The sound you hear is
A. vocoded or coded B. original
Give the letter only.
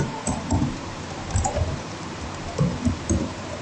A